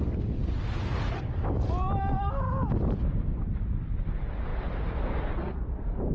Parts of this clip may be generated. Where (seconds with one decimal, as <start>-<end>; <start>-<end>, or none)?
none